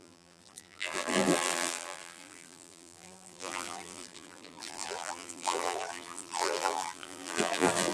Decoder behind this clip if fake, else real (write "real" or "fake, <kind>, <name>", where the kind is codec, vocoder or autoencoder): fake, vocoder, BigVGAN v2